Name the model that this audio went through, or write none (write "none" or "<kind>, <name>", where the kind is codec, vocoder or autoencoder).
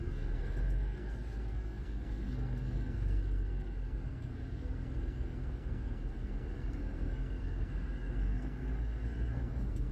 codec, SNAC